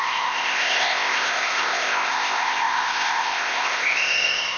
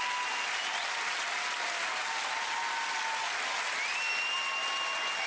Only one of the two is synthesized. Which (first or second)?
first